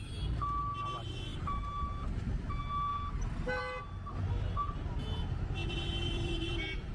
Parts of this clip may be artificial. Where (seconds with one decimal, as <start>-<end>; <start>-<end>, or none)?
1.3-2.5; 5.6-6.9